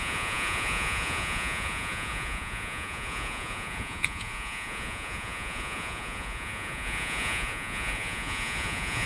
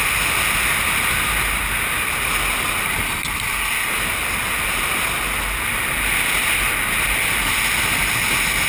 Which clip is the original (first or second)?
second